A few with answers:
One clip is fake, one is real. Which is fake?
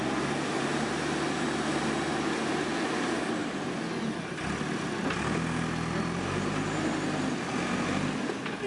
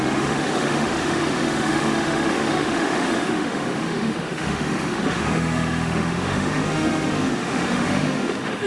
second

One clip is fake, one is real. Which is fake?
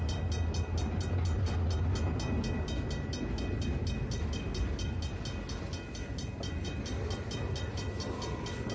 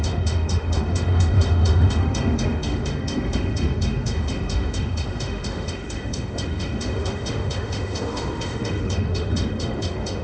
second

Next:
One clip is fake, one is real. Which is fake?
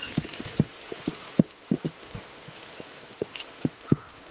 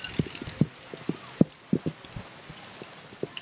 first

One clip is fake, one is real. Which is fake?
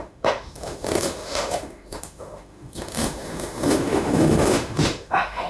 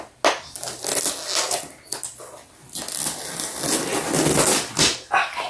first